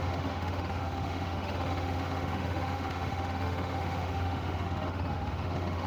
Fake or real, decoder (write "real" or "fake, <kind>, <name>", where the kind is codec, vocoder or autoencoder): fake, autoencoder, DAC-VAE